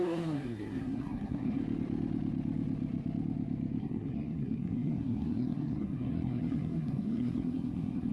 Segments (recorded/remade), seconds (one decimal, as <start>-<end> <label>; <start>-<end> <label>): 0.0-1.6 remade; 1.6-3.8 recorded; 3.8-8.1 remade